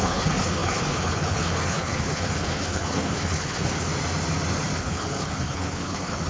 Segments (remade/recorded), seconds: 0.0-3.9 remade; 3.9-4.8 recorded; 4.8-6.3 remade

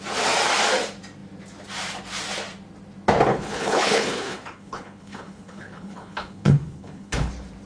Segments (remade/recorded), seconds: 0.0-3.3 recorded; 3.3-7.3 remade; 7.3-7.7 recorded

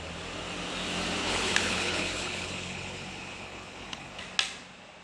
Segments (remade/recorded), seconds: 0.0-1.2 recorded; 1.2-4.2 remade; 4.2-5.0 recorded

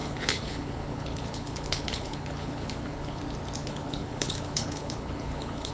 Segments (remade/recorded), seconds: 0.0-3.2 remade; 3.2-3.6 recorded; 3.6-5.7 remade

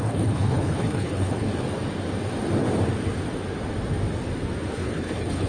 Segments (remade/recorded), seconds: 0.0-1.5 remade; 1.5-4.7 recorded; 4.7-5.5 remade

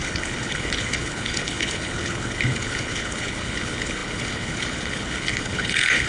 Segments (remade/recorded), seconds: 0.0-6.1 remade

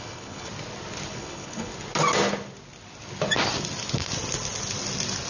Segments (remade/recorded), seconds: 0.0-0.5 remade; 0.5-1.1 recorded; 1.1-1.7 remade; 1.7-5.3 recorded